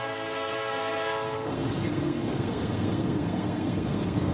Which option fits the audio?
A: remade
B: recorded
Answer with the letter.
A